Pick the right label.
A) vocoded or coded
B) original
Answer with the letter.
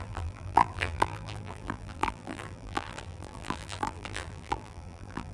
A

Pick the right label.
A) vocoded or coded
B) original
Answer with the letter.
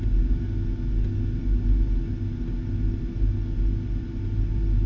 B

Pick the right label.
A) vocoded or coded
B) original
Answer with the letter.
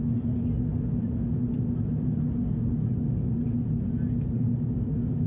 B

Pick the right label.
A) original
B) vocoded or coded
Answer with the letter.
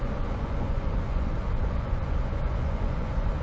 B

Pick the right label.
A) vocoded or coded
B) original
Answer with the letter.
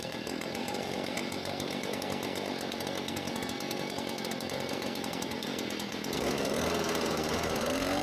A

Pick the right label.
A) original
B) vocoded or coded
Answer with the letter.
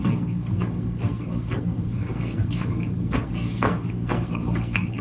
B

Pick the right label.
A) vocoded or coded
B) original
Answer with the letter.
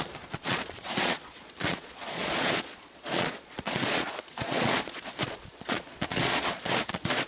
A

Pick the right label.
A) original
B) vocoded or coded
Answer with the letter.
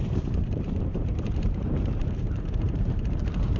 B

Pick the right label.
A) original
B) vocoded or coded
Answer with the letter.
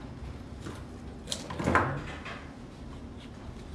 A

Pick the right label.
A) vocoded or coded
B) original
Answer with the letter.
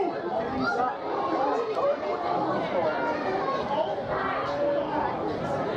B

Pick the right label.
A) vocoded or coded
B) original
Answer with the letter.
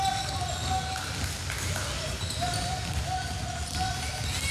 B